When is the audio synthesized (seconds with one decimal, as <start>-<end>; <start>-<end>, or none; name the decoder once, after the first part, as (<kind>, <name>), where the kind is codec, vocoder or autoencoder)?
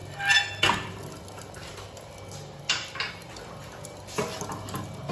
none